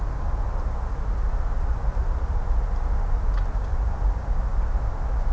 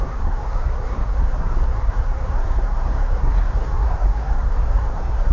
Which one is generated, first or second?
second